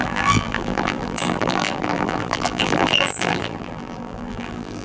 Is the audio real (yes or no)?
no